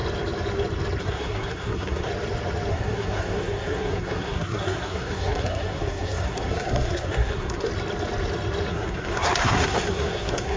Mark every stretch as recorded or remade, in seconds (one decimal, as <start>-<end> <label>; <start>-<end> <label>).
0.0-1.0 recorded; 1.0-2.1 remade; 2.1-2.7 recorded; 2.7-7.7 remade; 7.7-8.7 recorded; 8.7-10.6 remade